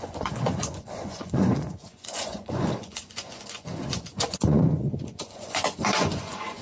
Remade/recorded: remade